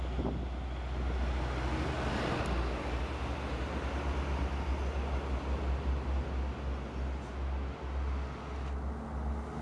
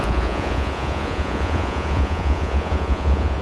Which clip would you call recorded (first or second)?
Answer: first